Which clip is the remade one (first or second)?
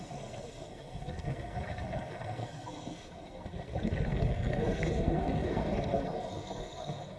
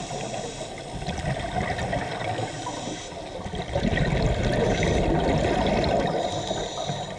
first